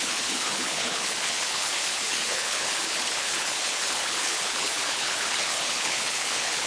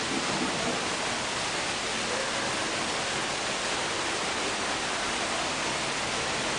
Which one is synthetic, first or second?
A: first